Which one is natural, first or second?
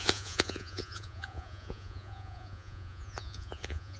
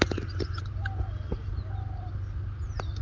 second